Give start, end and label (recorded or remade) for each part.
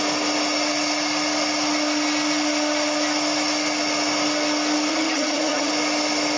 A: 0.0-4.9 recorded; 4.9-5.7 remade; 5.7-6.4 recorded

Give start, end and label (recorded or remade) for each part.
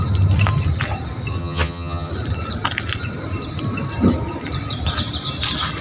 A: 0.0-1.4 recorded; 1.4-2.1 remade; 2.1-5.8 recorded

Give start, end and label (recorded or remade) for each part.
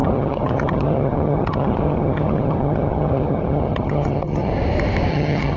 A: 0.0-4.5 remade; 4.5-5.1 recorded; 5.1-5.6 remade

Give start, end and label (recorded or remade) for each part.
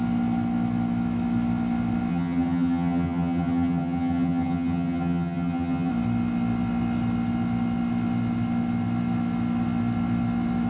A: 0.0-2.1 recorded; 2.1-5.9 remade; 5.9-10.7 recorded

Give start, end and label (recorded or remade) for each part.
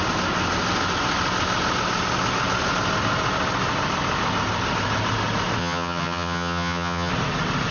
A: 0.0-5.6 recorded; 5.6-7.1 remade; 7.1-7.7 recorded